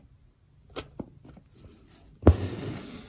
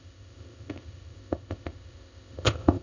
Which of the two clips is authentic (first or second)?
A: first